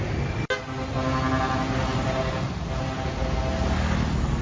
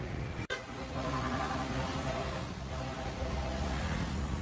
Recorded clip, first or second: first